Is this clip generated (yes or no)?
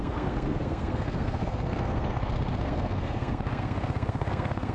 yes